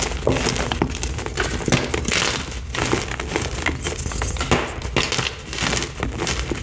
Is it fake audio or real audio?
real